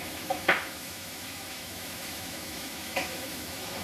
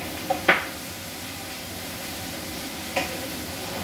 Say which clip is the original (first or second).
second